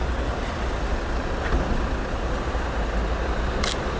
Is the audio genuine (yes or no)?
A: yes